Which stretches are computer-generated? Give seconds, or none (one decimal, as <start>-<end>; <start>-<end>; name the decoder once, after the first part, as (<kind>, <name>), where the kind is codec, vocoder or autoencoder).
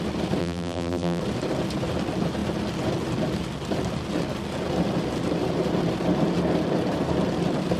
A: 0.4-1.2 (vocoder, BigVGAN v2)